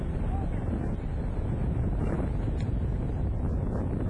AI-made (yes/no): no